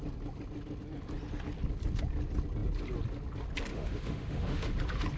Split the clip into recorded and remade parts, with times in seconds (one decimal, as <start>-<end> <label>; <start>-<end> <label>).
0.0-3.7 recorded; 3.7-4.7 remade; 4.7-5.2 recorded